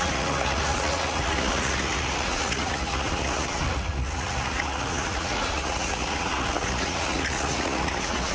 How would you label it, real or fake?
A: fake